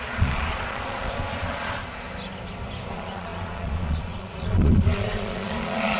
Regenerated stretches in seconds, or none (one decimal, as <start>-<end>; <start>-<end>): 0.0-1.8; 2.9-6.0